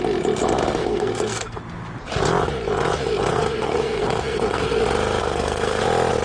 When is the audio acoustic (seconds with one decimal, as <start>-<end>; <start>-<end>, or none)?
0.0-0.8; 1.6-3.3; 4.8-5.2; 5.8-6.2